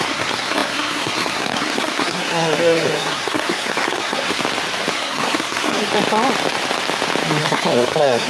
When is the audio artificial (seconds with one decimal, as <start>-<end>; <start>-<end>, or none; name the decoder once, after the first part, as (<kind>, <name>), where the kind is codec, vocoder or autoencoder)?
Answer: 0.0-4.4 (codec, SNAC); 4.9-5.9; 7.4-8.3